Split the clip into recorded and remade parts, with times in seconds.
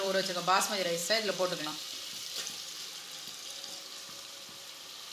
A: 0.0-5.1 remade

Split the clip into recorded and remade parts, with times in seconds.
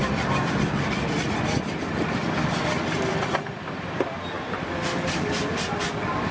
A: 0.0-3.1 remade; 3.1-6.3 recorded